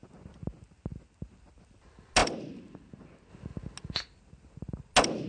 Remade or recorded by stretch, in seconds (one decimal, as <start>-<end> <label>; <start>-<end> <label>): 0.0-5.3 recorded